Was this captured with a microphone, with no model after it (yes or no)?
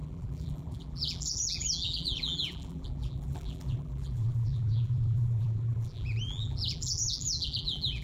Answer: no